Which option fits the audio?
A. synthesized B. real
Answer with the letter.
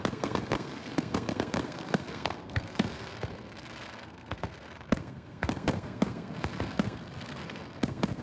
A